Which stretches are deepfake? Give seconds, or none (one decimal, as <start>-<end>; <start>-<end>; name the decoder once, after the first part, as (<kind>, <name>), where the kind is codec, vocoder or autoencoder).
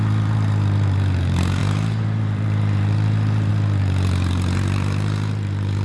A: 0.0-5.8 (vocoder, BigVGAN v2)